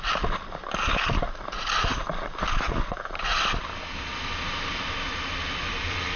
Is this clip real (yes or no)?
yes